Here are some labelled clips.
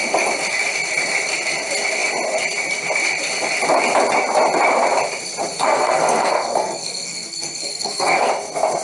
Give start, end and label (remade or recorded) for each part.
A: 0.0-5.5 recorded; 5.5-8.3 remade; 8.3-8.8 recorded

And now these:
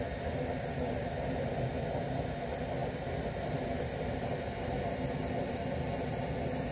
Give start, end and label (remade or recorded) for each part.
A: 0.0-6.7 recorded